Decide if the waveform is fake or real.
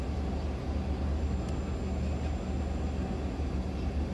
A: real